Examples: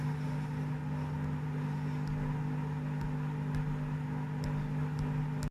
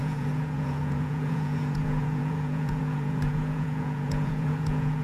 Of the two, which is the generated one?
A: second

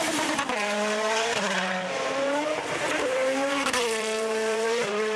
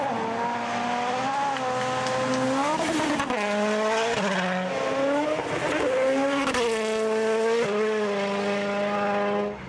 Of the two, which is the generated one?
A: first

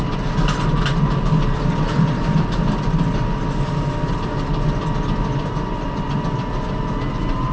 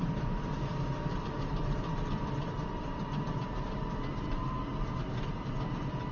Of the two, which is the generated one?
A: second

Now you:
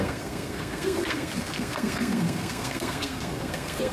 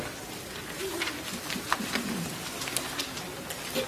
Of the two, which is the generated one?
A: first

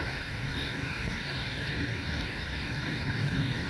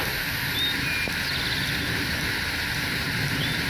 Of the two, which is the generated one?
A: first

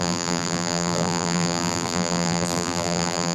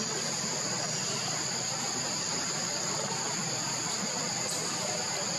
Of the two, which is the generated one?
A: first